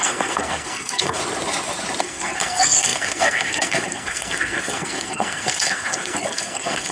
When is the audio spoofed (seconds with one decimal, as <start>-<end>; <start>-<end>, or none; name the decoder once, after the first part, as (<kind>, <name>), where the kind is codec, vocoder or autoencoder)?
0.0-1.2 (codec, SNAC); 2.0-6.9